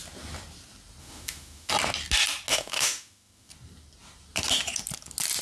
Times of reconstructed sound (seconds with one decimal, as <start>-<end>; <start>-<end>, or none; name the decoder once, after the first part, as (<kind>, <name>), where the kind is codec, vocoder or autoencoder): 1.0-1.7 (autoencoder, DAC-VAE); 2.5-3.5